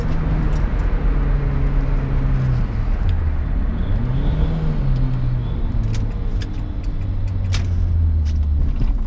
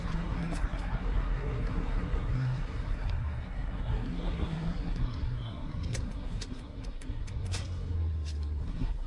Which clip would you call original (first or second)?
first